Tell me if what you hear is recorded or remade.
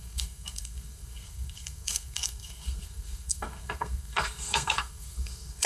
remade